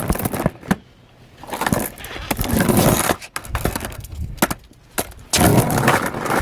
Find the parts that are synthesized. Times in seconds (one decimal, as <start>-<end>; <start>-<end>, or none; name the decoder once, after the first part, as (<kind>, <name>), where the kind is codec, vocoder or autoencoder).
3.4-4.4 (codec, SNAC)